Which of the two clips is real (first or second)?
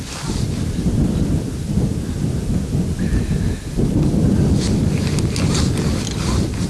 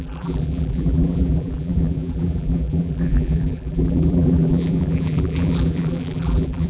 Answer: first